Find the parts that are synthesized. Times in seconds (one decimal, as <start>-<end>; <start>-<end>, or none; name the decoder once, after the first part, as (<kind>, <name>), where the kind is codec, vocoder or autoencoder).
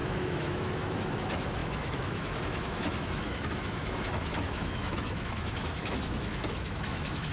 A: 0.0-7.3 (autoencoder, DAC-VAE)